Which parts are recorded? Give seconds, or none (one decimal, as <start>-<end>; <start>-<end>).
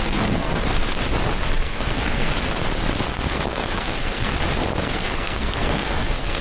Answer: 0.5-1.6; 2.3-3.3; 4.3-4.8